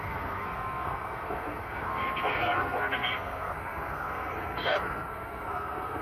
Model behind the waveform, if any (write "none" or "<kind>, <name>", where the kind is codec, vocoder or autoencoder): codec, SNAC